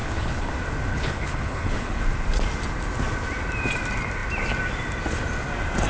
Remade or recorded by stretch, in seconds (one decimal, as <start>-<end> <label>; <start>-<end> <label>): 0.0-0.5 remade; 0.5-0.9 recorded; 0.9-2.0 remade; 2.0-5.9 recorded